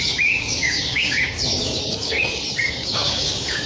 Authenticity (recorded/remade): remade